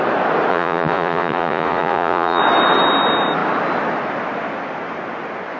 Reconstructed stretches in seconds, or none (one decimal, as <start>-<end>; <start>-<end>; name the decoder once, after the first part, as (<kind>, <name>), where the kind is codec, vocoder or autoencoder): 0.5-2.4 (vocoder, Vocos)